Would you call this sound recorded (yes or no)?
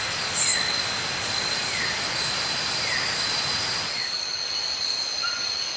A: yes